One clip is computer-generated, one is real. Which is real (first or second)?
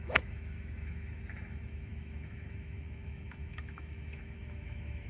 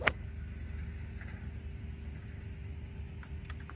second